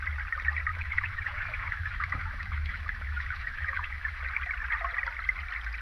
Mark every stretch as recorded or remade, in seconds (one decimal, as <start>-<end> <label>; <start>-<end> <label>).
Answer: 0.0-0.7 recorded; 0.7-4.2 remade; 4.2-5.8 recorded